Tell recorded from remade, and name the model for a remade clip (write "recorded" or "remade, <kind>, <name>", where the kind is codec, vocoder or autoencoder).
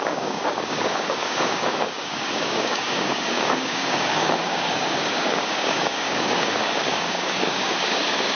remade, codec, DAC